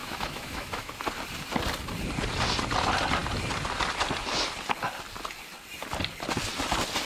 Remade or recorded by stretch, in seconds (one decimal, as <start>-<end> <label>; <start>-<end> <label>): 0.0-0.9 remade; 0.9-7.0 recorded